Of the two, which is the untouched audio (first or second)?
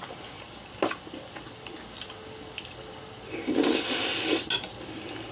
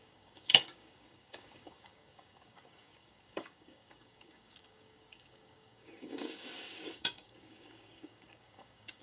first